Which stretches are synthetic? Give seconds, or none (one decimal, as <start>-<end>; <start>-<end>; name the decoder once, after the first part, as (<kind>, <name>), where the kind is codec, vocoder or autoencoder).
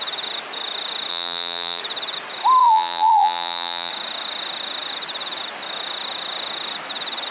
1.1-1.8 (vocoder, BigVGAN v2); 2.6-3.9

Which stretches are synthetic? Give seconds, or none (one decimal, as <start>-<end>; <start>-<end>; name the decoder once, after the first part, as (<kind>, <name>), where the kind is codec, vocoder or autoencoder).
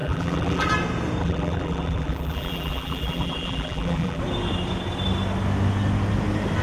0.0-0.7 (vocoder, BigVGAN v2); 1.2-4.2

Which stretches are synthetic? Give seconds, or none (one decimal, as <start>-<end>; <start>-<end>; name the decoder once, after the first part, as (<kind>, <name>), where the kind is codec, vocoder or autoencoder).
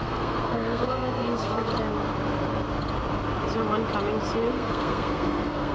0.0-1.7 (codec, SNAC); 4.5-5.7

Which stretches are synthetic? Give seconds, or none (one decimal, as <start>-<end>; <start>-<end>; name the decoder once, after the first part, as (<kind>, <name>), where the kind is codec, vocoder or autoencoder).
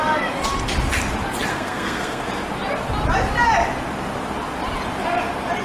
1.5-2.2 (codec, SNAC)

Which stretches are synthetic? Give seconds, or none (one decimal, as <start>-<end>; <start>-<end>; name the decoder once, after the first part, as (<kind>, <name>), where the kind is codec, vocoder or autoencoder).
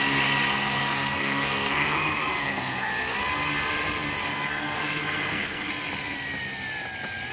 0.8-2.9 (codec, SNAC); 4.3-5.7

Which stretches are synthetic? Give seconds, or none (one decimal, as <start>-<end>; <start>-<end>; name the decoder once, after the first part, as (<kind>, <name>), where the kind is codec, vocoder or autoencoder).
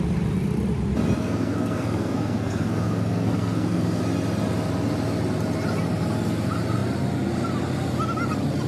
1.2-4.0 (codec, SNAC)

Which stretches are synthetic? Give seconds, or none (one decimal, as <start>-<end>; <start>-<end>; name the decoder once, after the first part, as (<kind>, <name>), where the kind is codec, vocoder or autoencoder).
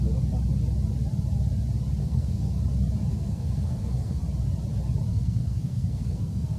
2.0-2.6 (codec, SNAC); 3.1-4.2; 5.1-6.6